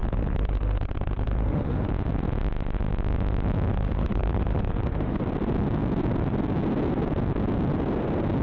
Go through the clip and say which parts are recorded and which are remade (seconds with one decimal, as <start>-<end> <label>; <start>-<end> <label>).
0.0-1.9 remade; 1.9-3.7 recorded; 3.7-5.2 remade; 5.2-8.4 recorded